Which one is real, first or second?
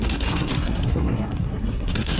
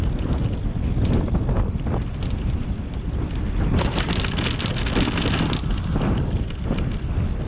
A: second